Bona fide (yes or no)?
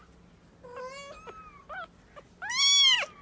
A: yes